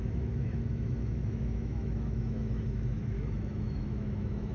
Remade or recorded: remade